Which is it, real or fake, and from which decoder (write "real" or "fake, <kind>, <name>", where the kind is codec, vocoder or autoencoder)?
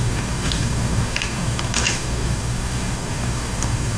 fake, codec, DAC